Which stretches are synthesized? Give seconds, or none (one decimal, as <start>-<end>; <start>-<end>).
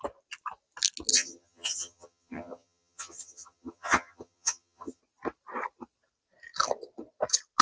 1.1-5.0